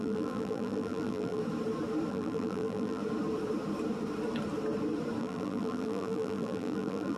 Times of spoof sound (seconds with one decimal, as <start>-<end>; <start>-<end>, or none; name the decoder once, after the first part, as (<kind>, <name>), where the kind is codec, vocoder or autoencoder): 0.0-1.4 (vocoder, BigVGAN v2); 2.1-3.0; 5.2-7.2